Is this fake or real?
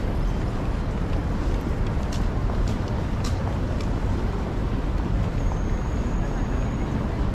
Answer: real